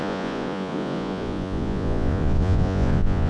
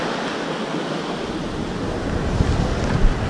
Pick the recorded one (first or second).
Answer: second